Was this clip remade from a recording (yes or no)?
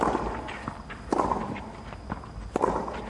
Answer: no